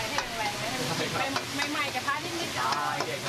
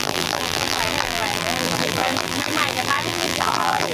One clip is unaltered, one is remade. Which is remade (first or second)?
second